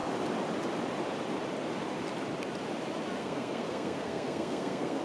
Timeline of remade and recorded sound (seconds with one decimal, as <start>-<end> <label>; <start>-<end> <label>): 0.0-3.2 recorded; 3.2-5.0 remade